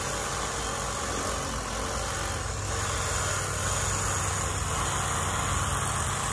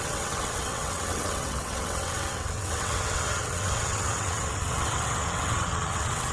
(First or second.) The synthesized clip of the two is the second